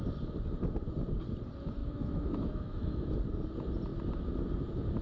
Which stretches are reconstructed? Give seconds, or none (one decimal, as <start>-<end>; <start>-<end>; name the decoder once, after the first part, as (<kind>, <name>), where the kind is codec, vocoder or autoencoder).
1.8-3.1 (autoencoder, DAC-VAE)